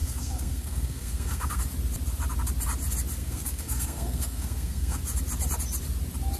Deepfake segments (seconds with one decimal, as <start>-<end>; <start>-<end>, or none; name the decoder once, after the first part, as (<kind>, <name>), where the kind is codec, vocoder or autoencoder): 0.0-1.6 (codec, SNAC); 3.2-5.0